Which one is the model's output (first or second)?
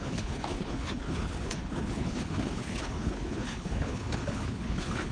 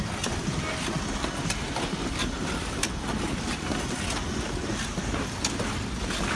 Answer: first